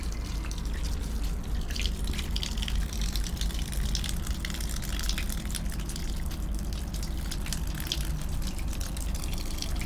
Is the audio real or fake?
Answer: real